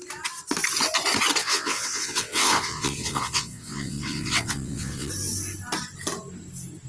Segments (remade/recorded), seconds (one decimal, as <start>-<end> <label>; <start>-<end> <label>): 0.0-1.4 recorded; 1.4-5.1 remade; 5.1-6.9 recorded